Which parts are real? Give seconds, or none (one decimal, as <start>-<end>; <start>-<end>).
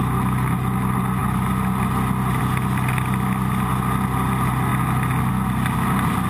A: 0.0-6.3